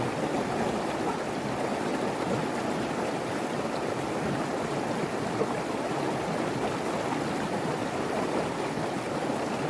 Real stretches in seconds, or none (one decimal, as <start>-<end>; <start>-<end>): 0.0-9.7